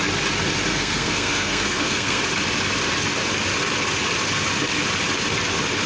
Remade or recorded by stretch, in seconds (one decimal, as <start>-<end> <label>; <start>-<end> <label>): 0.0-0.7 recorded; 0.7-2.2 remade; 2.2-5.9 recorded